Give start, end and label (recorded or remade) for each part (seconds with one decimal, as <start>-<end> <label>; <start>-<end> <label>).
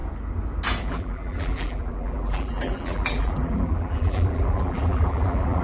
0.0-0.8 recorded; 0.8-5.6 remade